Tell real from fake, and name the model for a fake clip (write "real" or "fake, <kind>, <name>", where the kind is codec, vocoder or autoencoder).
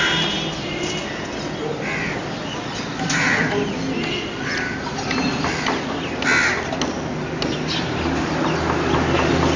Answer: real